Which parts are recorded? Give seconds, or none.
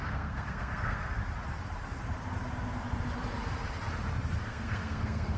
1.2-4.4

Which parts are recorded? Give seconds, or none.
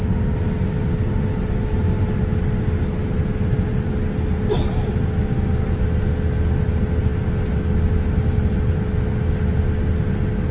0.0-10.5